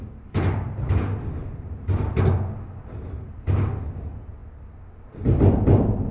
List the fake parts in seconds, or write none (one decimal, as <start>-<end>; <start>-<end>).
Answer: none